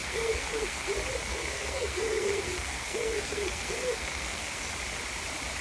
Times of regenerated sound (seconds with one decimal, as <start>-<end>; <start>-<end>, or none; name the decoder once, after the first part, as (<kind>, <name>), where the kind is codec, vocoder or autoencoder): 0.0-0.9 (codec, SNAC); 1.3-4.7